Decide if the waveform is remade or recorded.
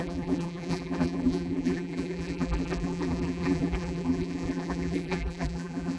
remade